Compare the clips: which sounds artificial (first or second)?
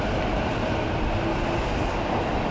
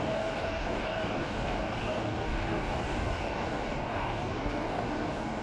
second